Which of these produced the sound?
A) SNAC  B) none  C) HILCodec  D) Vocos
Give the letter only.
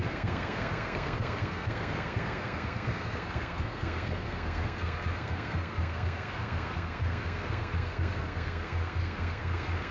A